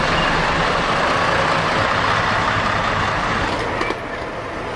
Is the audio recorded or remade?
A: recorded